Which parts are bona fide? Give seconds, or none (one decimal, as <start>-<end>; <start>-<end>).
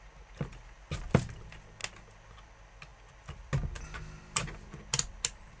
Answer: 0.0-5.6